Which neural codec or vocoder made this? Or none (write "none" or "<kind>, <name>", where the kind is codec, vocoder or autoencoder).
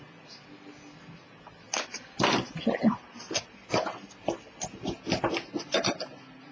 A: none